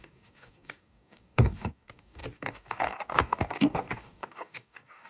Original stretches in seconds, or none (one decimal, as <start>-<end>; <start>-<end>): none